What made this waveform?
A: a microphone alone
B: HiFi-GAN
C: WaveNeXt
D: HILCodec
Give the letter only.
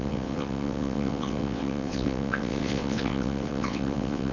C